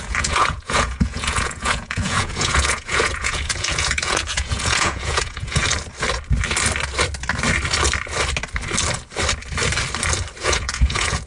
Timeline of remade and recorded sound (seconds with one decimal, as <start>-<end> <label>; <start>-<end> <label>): 0.0-5.6 remade; 5.6-10.4 recorded; 10.4-11.3 remade